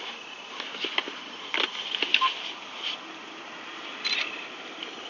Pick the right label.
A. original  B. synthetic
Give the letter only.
A